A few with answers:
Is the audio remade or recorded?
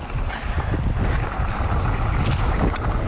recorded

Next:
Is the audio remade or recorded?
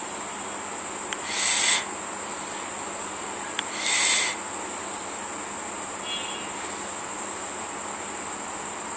recorded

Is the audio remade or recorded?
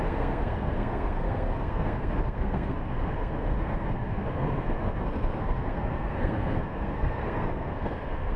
remade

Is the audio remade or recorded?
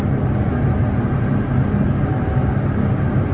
recorded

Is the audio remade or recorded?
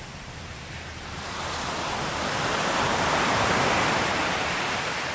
remade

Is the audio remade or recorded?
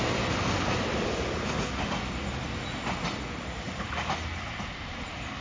recorded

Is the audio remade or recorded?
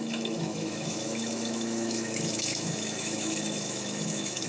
remade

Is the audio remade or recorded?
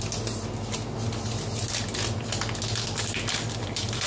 recorded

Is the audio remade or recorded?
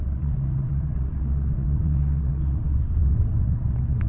remade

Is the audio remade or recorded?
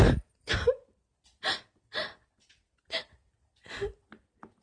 recorded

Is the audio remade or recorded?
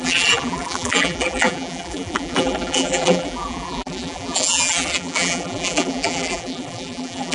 remade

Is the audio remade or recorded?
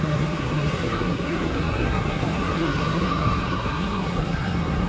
remade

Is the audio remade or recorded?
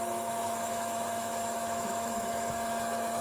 remade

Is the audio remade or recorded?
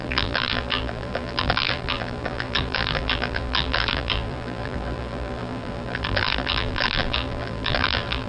remade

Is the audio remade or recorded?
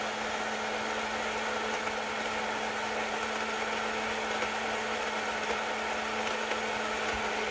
recorded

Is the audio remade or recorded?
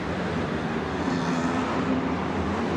remade